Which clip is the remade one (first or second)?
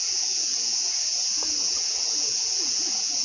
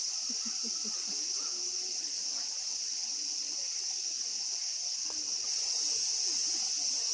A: first